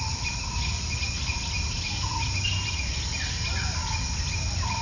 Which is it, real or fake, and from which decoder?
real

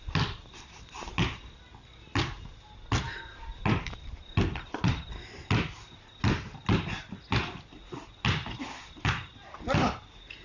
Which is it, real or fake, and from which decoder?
real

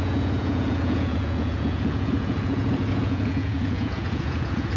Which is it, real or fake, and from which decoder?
fake, vocoder, Vocos